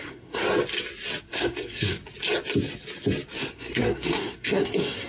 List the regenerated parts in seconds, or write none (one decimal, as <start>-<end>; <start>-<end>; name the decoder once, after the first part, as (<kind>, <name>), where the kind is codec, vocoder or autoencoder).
0.0-0.4 (codec, SNAC); 1.2-2.0; 3.4-5.1